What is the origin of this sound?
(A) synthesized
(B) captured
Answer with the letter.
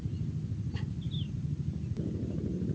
B